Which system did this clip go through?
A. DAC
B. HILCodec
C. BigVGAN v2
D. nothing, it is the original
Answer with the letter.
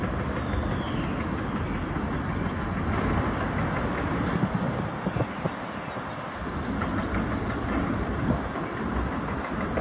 D